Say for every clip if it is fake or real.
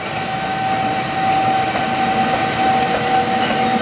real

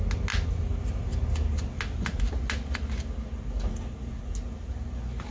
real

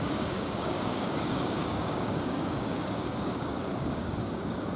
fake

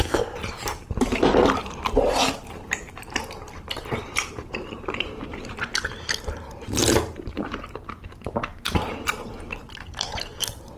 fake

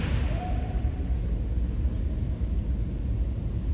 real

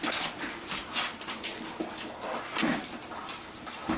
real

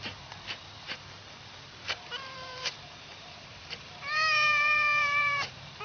fake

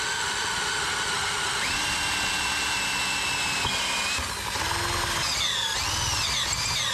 real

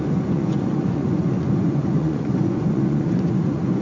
fake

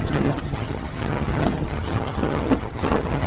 fake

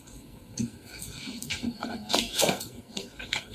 fake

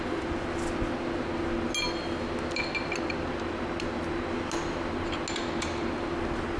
real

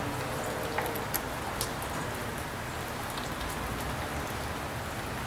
real